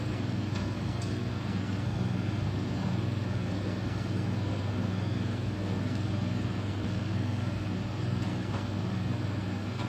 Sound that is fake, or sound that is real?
fake